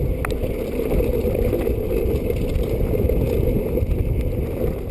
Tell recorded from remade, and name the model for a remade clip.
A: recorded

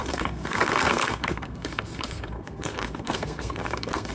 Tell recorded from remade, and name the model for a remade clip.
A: remade, codec, SNAC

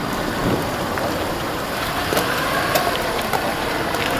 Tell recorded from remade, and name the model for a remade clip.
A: remade, vocoder, BigVGAN v2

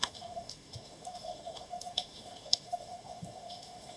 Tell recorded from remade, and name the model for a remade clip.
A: remade, autoencoder, DAC-VAE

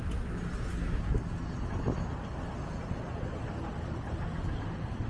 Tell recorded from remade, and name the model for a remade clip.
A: recorded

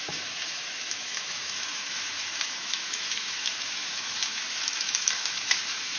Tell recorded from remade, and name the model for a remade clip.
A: remade, autoencoder, DAC-VAE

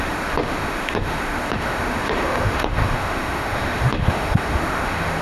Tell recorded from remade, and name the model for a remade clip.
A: remade, autoencoder, DAC-VAE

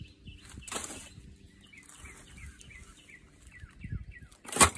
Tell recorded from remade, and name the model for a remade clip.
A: recorded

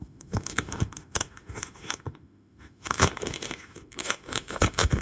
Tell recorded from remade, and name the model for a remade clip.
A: remade, autoencoder, DAC-VAE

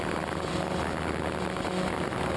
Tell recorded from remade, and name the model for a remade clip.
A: recorded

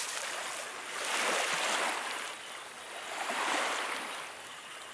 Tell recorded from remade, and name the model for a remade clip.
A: recorded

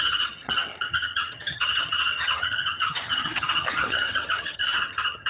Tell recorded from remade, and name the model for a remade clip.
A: remade, vocoder, HiFi-GAN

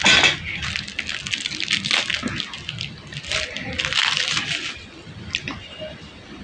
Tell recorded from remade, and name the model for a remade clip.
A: recorded